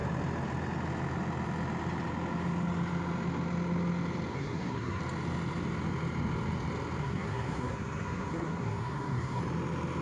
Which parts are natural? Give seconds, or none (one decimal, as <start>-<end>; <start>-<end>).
0.0-4.3; 5.0-7.0; 9.4-10.0